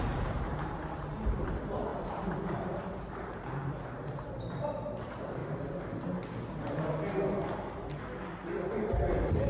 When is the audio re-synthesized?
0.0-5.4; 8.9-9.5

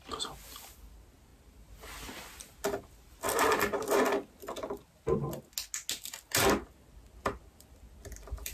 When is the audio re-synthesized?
none

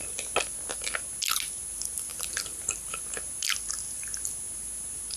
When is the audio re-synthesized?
2.1-3.0

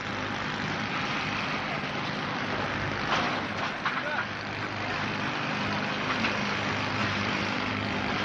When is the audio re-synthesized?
7.0-7.7

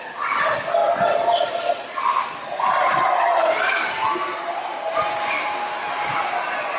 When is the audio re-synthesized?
3.3-4.1